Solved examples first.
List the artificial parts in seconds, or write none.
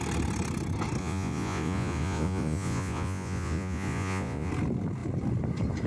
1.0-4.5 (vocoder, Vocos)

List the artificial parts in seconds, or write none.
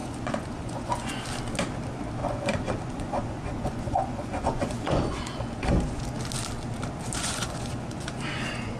0.0-1.2 (vocoder, Vocos); 2.2-6.0; 7.2-8.8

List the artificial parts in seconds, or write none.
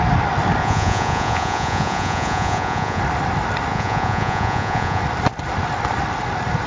0.6-3.0 (vocoder, Vocos); 3.7-5.0